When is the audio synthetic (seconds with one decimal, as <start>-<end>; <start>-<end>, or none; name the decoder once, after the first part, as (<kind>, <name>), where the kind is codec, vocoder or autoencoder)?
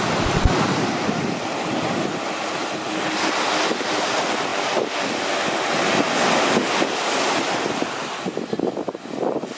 none